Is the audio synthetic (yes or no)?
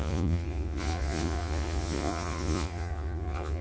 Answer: yes